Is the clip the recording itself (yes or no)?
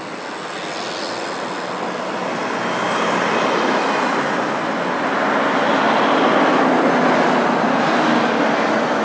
yes